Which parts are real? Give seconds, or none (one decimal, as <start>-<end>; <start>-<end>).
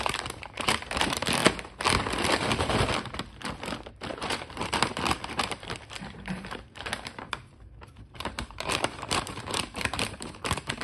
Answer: 1.4-3.9